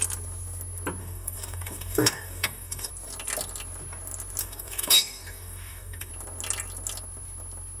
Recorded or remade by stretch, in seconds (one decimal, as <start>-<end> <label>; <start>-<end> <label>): 0.0-1.0 recorded; 1.0-2.9 remade; 2.9-4.4 recorded; 4.4-6.1 remade; 6.1-7.8 recorded